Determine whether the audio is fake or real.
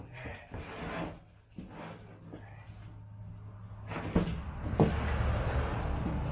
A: real